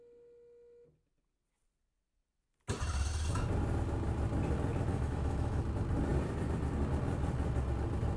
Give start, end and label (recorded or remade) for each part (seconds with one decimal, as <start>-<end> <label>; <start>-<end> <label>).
0.0-4.9 recorded; 4.9-5.6 remade; 5.6-8.2 recorded